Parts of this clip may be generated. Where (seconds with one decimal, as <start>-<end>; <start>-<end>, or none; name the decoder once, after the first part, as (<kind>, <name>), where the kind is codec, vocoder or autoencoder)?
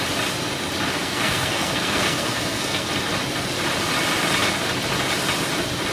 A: 0.9-2.9 (codec, SNAC)